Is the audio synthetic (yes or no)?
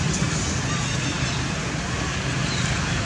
no